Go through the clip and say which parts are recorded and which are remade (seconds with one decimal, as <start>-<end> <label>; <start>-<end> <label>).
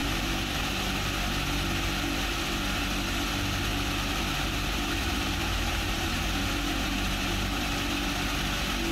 0.0-0.6 remade; 0.6-3.7 recorded; 3.7-7.7 remade; 7.7-8.9 recorded